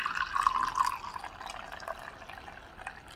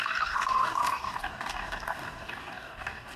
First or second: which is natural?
first